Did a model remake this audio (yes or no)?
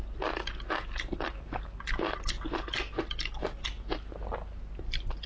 no